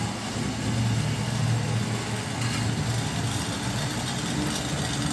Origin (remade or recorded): recorded